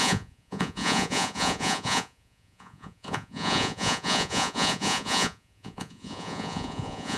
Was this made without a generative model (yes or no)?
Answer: no